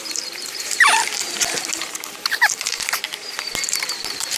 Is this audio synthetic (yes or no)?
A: yes